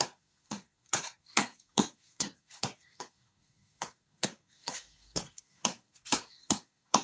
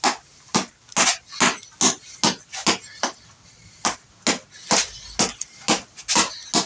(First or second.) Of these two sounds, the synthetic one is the first